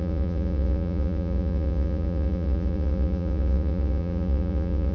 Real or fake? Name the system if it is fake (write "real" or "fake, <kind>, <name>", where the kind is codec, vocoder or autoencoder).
fake, vocoder, Vocos